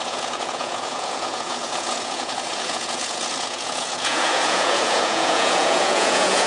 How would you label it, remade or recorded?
remade